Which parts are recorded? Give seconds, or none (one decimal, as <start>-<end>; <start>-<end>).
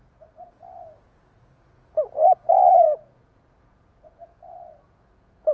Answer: none